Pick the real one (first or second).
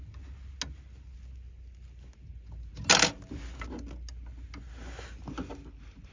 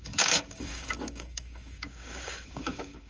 first